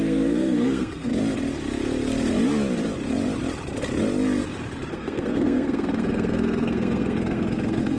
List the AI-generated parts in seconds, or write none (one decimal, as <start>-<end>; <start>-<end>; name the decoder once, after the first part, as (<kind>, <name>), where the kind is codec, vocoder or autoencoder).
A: 0.0-1.1 (codec, SNAC); 4.9-8.0